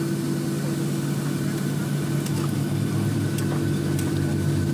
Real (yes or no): yes